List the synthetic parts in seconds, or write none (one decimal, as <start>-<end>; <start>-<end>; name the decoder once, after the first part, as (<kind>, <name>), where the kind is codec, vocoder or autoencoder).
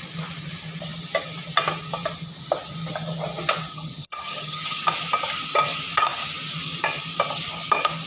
3.7-4.8 (vocoder, HiFi-GAN)